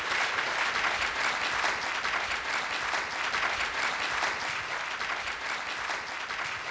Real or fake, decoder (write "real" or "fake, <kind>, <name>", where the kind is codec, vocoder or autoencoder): real